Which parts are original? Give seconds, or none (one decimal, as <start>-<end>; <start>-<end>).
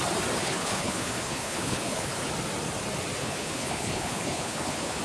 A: 0.0-0.4; 2.3-3.2